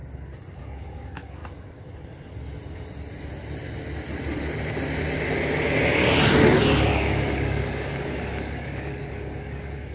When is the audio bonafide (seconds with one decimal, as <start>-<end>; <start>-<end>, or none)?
0.0-0.6; 1.4-6.6